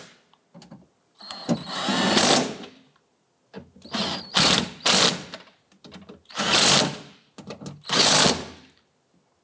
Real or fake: real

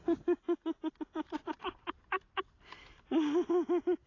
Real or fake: real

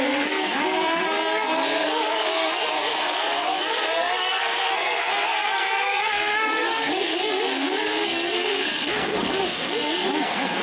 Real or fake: fake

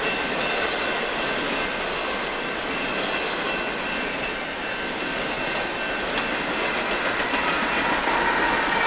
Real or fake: real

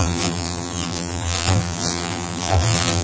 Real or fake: fake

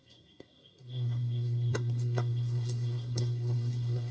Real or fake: fake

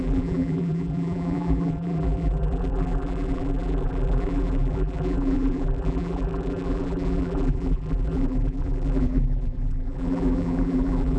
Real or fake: fake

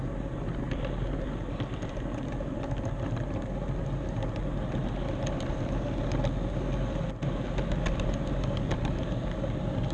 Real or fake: real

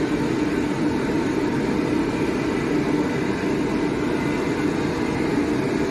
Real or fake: real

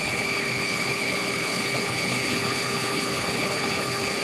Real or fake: fake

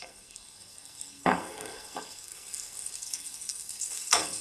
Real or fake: fake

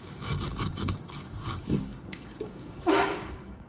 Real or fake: fake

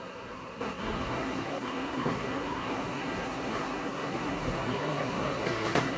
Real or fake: fake